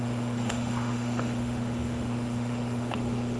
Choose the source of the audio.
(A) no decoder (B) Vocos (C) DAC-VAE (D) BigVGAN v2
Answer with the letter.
C